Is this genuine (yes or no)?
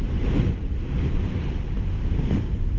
yes